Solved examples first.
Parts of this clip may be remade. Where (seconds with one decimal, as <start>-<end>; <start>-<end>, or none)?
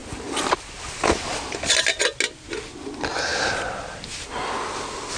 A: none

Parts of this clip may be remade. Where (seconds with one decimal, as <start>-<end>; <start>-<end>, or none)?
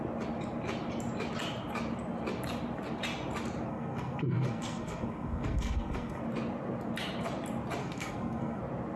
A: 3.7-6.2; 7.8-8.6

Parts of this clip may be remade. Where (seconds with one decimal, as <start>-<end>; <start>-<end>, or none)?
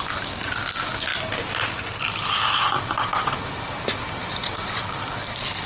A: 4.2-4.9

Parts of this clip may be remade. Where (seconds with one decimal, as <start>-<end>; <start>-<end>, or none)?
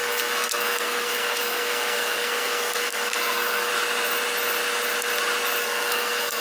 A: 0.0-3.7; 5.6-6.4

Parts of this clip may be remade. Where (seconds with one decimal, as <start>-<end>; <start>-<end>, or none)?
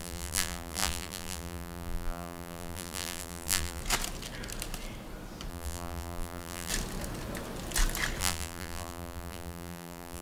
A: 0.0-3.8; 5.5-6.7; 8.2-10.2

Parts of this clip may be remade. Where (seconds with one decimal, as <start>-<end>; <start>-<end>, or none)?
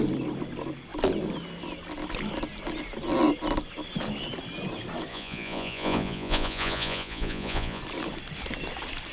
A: 5.1-7.8